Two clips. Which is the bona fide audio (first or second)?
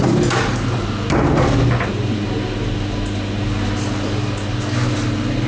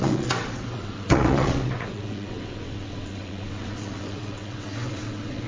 first